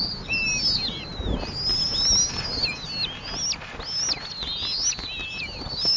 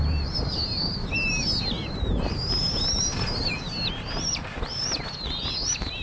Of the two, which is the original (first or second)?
first